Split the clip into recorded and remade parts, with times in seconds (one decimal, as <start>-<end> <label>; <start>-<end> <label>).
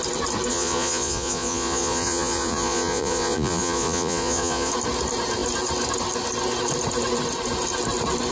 0.0-0.5 recorded; 0.5-4.7 remade; 4.7-8.3 recorded